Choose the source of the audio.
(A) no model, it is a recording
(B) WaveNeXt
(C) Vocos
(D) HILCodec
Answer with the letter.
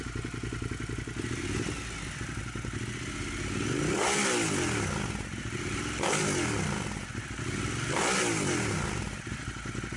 A